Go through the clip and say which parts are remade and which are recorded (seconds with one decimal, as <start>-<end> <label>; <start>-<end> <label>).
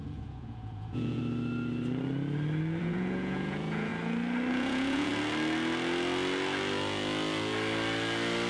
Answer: 0.0-1.2 remade; 1.2-2.8 recorded; 2.8-3.9 remade; 3.9-4.5 recorded; 4.5-5.1 remade; 5.1-8.5 recorded